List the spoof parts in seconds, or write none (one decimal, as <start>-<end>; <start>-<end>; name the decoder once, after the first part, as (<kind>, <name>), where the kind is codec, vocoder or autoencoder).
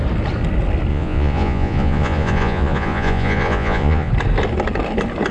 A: 0.9-4.1 (vocoder, Vocos)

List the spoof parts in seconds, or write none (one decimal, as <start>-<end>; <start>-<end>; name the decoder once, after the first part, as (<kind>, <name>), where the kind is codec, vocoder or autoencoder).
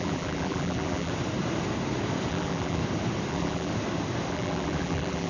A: 0.0-1.1 (vocoder, BigVGAN v2); 2.3-2.8; 3.3-3.7; 4.3-5.3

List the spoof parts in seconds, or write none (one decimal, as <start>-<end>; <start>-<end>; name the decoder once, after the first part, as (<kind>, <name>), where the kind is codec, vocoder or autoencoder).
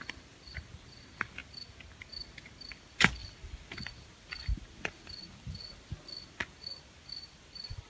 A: 0.0-1.4 (vocoder, BigVGAN v2); 2.7-5.6; 6.3-7.9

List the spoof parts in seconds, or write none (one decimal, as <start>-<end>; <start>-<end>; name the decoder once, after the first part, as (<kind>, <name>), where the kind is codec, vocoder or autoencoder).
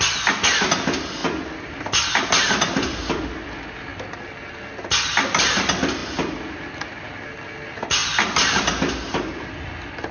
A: none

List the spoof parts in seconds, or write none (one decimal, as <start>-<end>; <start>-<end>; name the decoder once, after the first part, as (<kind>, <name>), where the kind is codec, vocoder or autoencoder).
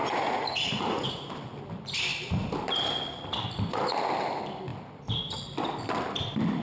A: 0.0-1.3 (vocoder, Vocos)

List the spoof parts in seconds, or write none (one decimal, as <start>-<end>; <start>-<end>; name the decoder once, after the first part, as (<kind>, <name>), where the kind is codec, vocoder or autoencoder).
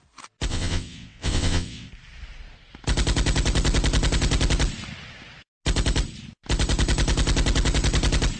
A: 0.5-1.9 (vocoder, WaveNeXt)